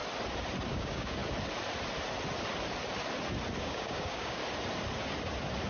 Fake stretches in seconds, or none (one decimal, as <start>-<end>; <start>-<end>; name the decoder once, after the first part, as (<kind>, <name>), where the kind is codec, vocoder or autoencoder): 0.7-1.2 (codec, DAC); 3.6-4.4